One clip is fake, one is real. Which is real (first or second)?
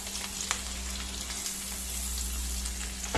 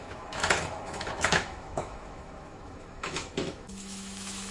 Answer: first